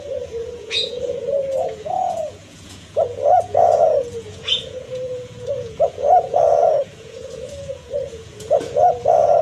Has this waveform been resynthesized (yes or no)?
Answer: yes